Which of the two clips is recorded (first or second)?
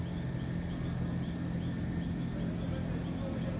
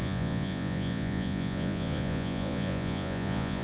first